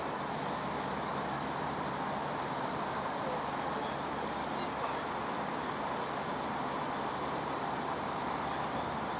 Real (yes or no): yes